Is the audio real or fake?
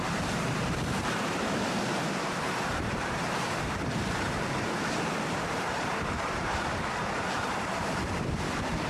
fake